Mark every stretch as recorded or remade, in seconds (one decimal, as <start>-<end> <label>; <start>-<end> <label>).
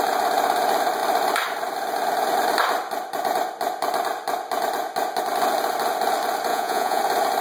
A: 0.0-6.5 recorded; 6.5-7.0 remade; 7.0-7.4 recorded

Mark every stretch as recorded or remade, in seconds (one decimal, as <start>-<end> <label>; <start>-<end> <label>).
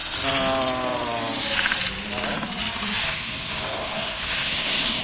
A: 0.0-3.0 recorded; 3.0-5.0 remade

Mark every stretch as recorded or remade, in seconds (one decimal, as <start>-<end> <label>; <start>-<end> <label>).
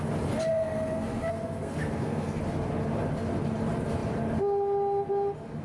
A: 0.0-0.5 recorded; 0.5-2.4 remade; 2.4-5.6 recorded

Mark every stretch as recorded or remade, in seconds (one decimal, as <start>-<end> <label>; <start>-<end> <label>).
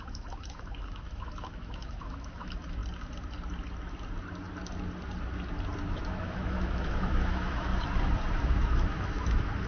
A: 0.0-2.8 remade; 2.8-6.1 recorded; 6.1-7.7 remade; 7.7-8.4 recorded; 8.4-9.7 remade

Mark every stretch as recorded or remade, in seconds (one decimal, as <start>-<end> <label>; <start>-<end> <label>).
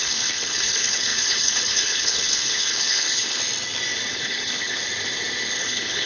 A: 0.0-3.4 remade; 3.4-4.1 recorded; 4.1-4.8 remade; 4.8-5.6 recorded; 5.6-6.1 remade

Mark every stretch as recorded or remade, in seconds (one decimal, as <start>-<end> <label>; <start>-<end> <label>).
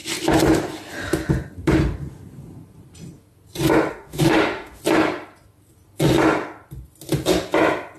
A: 0.0-3.9 recorded; 3.9-4.8 remade; 4.8-8.0 recorded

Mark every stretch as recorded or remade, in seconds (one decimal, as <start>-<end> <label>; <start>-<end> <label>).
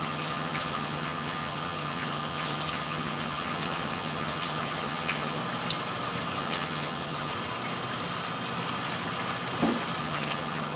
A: 0.0-5.4 remade; 5.4-6.4 recorded; 6.4-7.3 remade; 7.3-10.0 recorded; 10.0-10.8 remade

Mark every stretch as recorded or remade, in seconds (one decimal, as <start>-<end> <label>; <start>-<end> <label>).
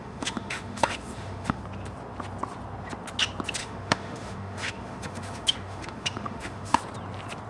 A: 0.0-1.6 remade; 1.6-3.6 recorded; 3.6-6.8 remade; 6.8-7.5 recorded